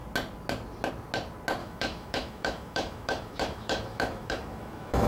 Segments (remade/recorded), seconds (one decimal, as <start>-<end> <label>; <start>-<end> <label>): 0.0-1.6 recorded; 1.6-5.1 remade